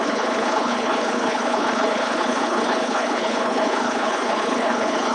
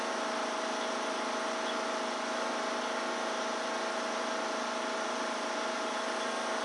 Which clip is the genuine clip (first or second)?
second